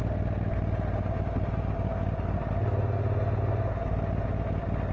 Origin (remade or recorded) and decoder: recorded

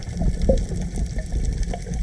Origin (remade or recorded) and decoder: recorded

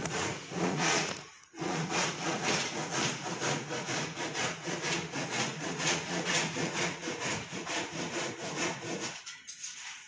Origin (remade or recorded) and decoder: remade, vocoder, Vocos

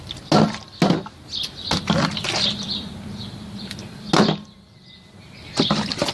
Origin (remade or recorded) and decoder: recorded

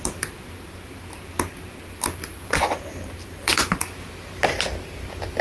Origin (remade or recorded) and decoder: recorded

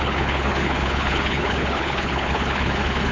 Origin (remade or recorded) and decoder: remade, codec, HILCodec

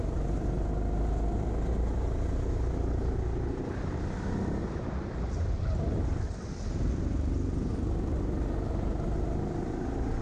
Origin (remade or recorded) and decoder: recorded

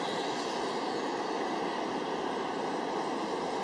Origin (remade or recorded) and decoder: recorded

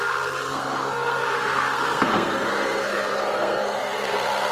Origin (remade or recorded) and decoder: remade, codec, SNAC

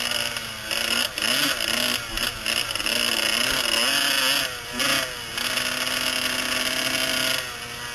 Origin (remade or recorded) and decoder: recorded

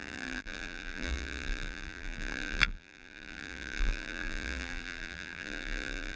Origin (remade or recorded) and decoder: remade, vocoder, BigVGAN v2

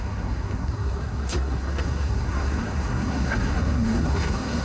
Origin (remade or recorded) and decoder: remade, codec, SNAC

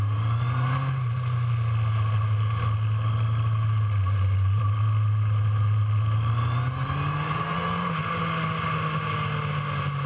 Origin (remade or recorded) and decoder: recorded